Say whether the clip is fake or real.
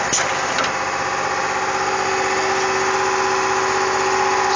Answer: real